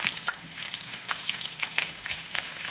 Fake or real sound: fake